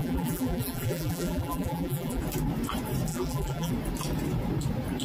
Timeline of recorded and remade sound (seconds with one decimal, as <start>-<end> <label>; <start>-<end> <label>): 0.0-2.2 remade; 2.2-3.1 recorded; 3.1-3.7 remade; 3.7-5.0 recorded